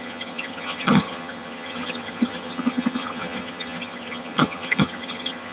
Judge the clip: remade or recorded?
remade